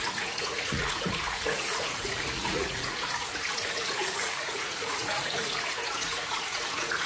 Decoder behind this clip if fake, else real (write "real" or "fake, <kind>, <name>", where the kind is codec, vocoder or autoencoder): fake, vocoder, Vocos